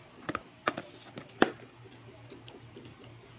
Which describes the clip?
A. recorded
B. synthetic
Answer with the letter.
A